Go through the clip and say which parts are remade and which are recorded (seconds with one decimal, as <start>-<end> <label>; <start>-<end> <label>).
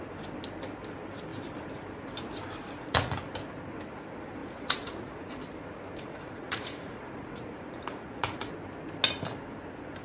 0.0-2.6 recorded; 2.6-3.2 remade; 3.2-4.4 recorded; 4.4-5.3 remade; 5.3-5.9 recorded; 5.9-8.5 remade; 8.5-10.0 recorded